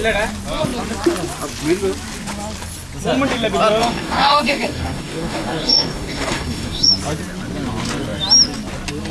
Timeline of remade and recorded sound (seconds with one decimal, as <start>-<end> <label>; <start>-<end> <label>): 0.0-3.8 recorded; 3.8-6.9 remade; 6.9-9.1 recorded

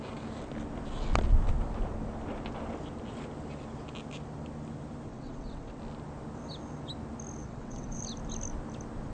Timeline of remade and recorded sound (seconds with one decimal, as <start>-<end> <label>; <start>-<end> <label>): 0.0-5.1 recorded; 5.1-5.8 remade; 5.8-7.4 recorded; 7.4-8.0 remade; 8.0-9.1 recorded

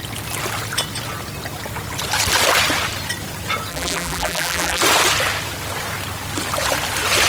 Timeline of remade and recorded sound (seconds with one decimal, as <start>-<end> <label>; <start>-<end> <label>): 0.0-3.7 recorded; 3.7-4.8 remade; 4.8-7.3 recorded

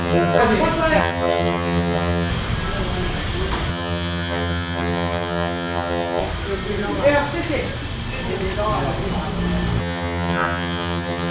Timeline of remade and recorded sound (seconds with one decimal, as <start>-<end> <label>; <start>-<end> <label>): 0.0-0.4 remade; 0.4-1.0 recorded; 1.0-2.3 remade; 2.3-3.7 recorded; 3.7-6.2 remade; 6.2-9.8 recorded; 9.8-11.3 remade

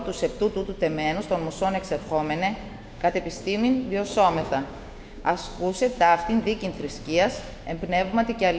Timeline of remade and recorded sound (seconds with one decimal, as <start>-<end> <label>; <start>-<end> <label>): 0.0-2.6 recorded; 2.6-6.4 remade; 6.4-8.6 recorded

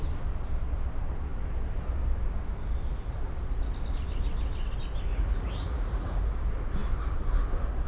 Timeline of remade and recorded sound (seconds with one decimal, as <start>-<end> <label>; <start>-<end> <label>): 0.0-5.1 recorded; 5.1-6.2 remade; 6.2-7.9 recorded

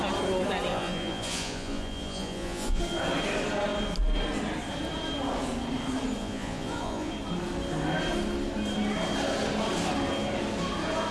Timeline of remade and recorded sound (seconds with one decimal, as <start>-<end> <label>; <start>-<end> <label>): 0.0-0.7 recorded; 0.7-2.8 remade; 2.8-6.2 recorded; 6.2-7.1 remade; 7.1-11.1 recorded